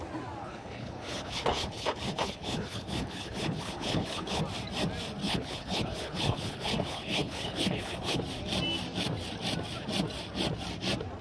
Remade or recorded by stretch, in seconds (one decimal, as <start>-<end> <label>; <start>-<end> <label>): 0.0-0.4 recorded; 0.4-4.4 remade; 4.4-5.2 recorded; 5.2-8.2 remade; 8.2-11.2 recorded